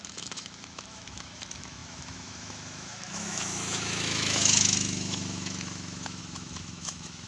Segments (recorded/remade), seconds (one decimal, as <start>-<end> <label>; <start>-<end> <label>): 0.0-7.3 remade